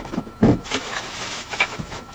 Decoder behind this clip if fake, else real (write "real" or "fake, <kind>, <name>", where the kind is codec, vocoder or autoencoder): fake, autoencoder, DAC-VAE